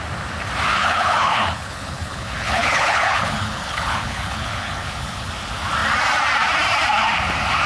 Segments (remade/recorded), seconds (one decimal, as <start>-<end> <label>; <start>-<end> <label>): 0.0-0.7 recorded; 0.7-5.3 remade; 5.3-7.7 recorded